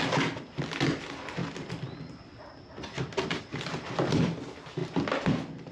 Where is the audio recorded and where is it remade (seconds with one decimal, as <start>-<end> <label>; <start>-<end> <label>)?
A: 0.0-5.7 recorded